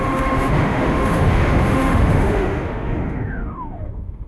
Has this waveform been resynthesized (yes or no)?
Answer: yes